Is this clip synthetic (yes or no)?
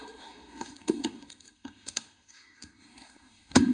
yes